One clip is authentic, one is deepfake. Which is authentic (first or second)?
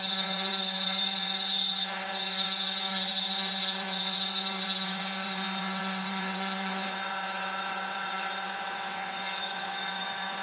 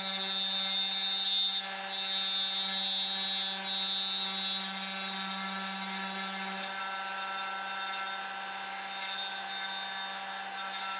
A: second